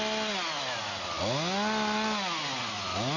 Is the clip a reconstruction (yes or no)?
no